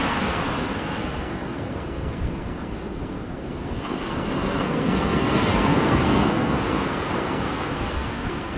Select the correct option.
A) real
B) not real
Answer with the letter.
B